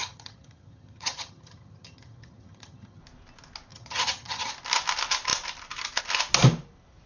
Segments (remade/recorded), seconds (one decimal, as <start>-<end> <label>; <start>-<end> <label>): 0.0-3.0 remade; 3.0-3.7 recorded; 3.7-4.5 remade; 4.5-7.1 recorded